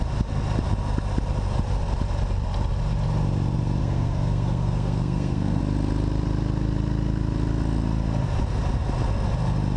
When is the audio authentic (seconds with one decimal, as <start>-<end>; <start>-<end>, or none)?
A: 0.0-3.8; 5.6-9.8